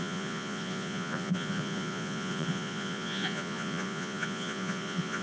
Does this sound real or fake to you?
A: fake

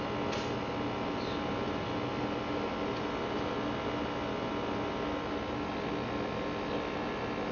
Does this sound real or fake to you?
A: real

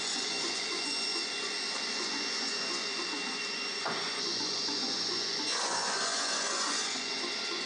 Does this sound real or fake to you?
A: fake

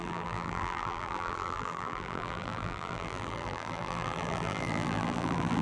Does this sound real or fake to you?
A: fake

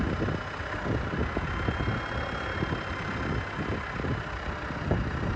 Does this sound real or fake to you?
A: real